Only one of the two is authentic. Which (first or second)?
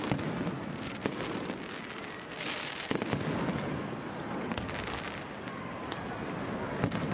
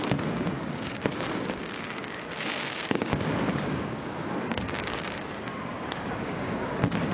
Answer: first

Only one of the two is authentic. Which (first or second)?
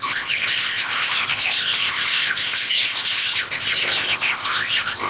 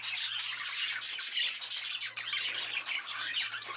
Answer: second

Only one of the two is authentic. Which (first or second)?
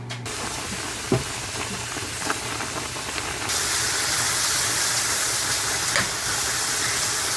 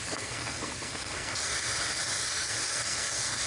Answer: first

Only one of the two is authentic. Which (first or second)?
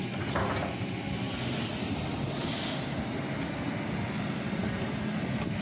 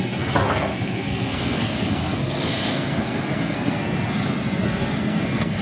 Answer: first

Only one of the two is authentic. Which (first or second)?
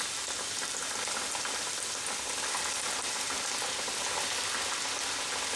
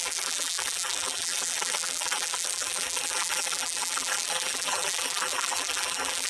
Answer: first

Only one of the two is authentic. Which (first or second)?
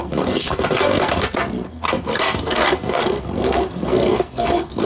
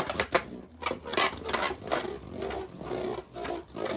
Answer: second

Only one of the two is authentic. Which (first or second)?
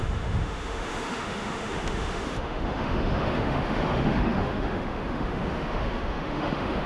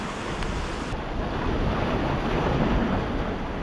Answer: second